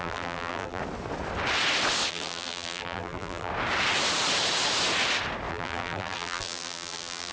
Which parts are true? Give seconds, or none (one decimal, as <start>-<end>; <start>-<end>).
0.8-2.1; 3.5-5.5